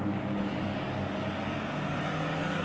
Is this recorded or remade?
remade